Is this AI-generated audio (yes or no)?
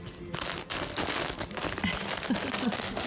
no